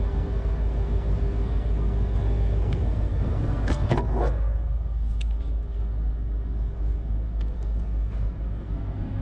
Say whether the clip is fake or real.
fake